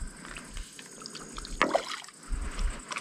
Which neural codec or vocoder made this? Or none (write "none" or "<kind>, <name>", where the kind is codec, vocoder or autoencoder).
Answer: none